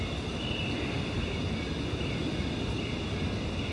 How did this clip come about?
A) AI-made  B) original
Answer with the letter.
B